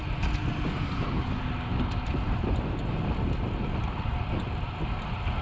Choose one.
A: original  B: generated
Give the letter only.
A